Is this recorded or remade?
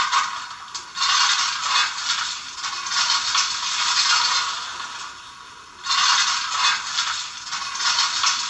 recorded